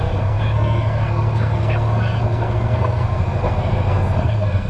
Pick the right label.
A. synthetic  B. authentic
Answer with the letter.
A